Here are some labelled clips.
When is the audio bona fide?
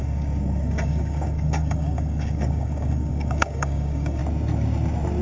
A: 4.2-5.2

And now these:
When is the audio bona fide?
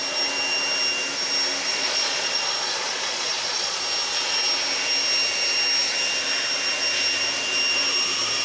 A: 0.0-1.7; 3.8-8.4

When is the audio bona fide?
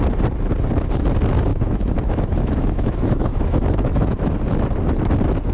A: 0.0-1.5; 4.3-5.5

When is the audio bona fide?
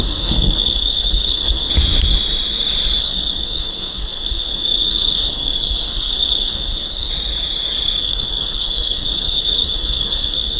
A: 1.7-3.0; 7.1-8.0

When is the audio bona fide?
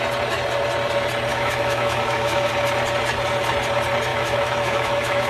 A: 0.0-1.3; 2.5-4.1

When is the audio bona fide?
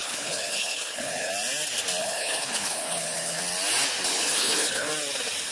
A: 1.3-2.0; 3.4-4.1; 4.9-5.5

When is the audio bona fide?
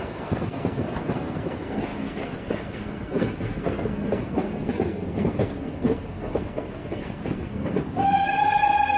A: none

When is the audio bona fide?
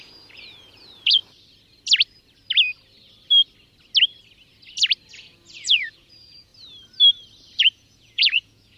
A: 1.2-5.1; 6.5-7.6